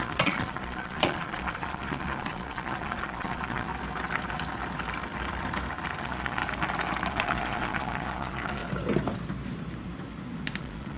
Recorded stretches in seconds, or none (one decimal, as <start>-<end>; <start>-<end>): 3.7-6.0; 6.4-7.1; 8.6-10.6